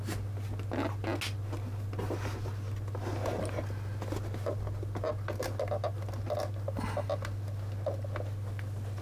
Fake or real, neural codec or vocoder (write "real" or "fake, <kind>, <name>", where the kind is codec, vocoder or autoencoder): real